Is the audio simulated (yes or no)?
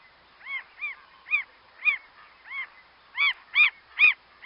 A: no